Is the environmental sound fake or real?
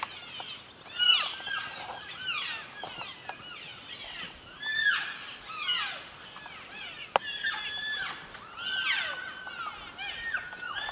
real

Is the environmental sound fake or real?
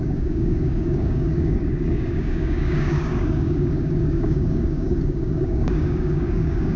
fake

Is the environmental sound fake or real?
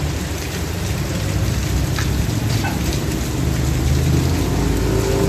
real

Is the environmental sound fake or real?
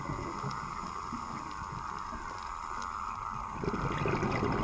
real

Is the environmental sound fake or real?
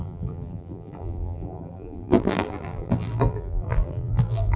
fake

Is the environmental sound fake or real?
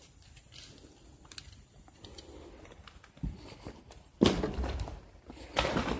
real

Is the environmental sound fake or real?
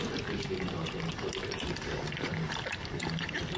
real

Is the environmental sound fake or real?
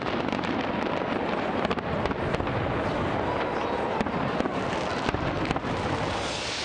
real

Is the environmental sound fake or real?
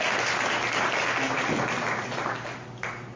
real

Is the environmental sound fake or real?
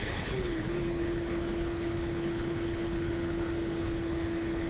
fake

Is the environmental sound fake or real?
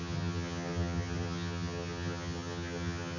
fake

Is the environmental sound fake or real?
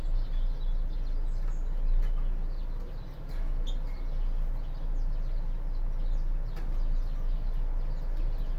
real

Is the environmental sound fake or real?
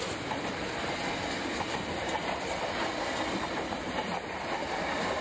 real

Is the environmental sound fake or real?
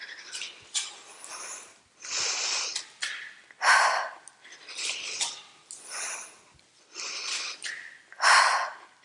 real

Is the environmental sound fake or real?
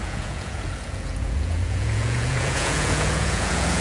fake